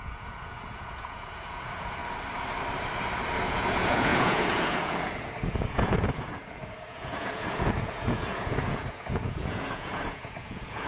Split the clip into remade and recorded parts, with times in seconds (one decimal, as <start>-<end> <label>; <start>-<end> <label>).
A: 0.0-2.0 remade; 2.0-3.5 recorded; 3.5-10.9 remade

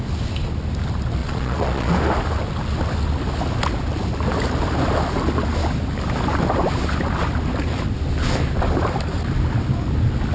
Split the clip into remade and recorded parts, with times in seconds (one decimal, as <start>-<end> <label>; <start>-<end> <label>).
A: 0.0-1.2 recorded; 1.2-1.9 remade; 1.9-10.3 recorded